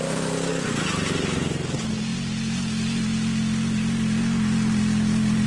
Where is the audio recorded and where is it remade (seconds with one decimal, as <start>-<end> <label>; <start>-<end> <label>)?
0.0-5.5 recorded